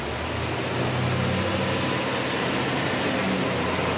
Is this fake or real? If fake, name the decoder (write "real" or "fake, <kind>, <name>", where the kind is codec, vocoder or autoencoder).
real